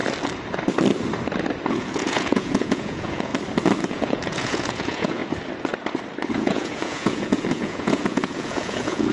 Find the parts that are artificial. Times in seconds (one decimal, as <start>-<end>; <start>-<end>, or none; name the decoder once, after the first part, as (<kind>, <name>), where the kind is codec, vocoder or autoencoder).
1.7-3.3 (vocoder, Vocos); 3.8-5.2; 6.3-9.1